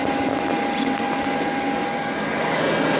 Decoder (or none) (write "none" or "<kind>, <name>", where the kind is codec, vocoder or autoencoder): none